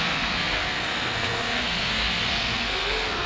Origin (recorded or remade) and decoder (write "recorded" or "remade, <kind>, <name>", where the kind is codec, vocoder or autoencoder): remade, codec, SNAC